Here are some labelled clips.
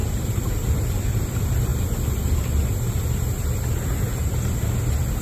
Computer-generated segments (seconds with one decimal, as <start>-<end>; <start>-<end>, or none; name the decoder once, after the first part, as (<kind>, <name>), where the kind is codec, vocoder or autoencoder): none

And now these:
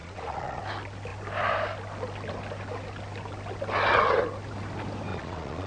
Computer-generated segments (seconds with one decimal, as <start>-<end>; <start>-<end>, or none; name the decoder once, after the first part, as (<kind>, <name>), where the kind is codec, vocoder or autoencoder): 0.0-0.6 (vocoder, Vocos); 5.1-5.7

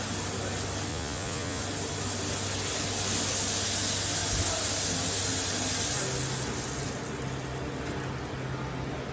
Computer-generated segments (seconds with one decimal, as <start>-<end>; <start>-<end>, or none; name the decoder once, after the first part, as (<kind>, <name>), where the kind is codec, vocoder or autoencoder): 0.9-1.6 (vocoder, Vocos)